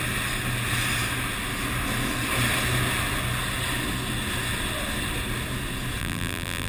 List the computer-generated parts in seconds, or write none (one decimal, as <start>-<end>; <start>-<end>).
6.0-6.7